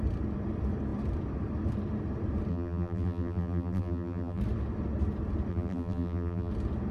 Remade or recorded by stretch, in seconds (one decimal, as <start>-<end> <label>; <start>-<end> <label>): 0.0-2.5 recorded; 2.5-4.4 remade; 4.4-5.5 recorded; 5.5-6.5 remade; 6.5-6.9 recorded